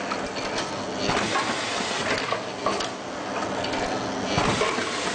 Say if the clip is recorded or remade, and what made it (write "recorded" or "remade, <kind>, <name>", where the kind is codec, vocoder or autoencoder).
recorded